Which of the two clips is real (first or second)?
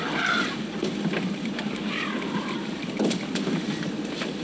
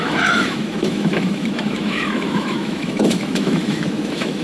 first